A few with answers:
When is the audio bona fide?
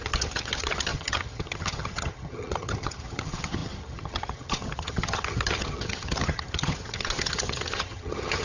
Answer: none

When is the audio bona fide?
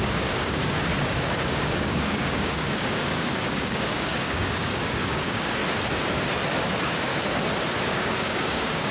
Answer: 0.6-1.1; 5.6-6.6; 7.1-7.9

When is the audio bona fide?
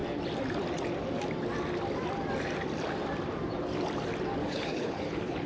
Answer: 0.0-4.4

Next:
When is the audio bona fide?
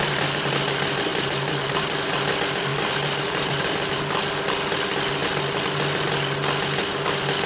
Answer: 0.0-1.1; 2.1-2.7; 4.0-7.5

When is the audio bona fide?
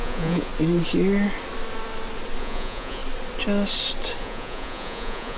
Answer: 0.5-2.4; 3.0-4.2